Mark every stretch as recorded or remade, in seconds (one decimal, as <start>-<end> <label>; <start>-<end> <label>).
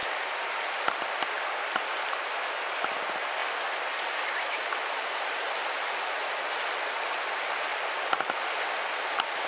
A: 0.0-2.4 remade; 2.4-7.7 recorded; 7.7-8.6 remade; 8.6-9.5 recorded